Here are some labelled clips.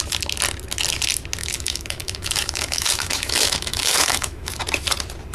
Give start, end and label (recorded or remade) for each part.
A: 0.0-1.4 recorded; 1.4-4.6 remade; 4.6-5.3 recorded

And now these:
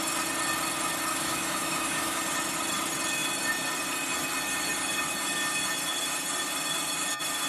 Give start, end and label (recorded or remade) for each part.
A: 0.0-1.1 recorded; 1.1-2.2 remade; 2.2-7.5 recorded

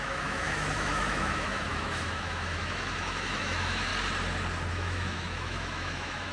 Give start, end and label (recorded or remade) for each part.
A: 0.0-3.9 remade; 3.9-4.7 recorded; 4.7-6.3 remade

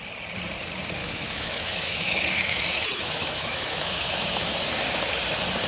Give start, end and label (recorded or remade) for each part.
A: 0.0-1.0 recorded; 1.0-4.4 remade; 4.4-5.7 recorded

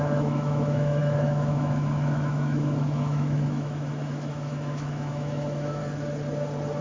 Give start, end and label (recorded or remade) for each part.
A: 0.0-5.8 remade; 5.8-6.8 recorded

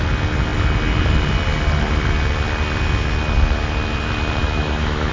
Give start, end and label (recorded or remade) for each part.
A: 0.0-4.4 recorded; 4.4-5.1 remade